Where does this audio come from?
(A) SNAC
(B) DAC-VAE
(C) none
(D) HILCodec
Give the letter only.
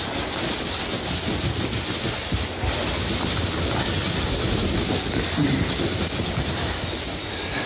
C